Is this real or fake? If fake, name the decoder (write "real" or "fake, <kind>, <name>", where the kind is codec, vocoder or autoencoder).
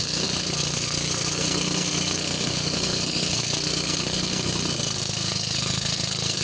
fake, codec, SNAC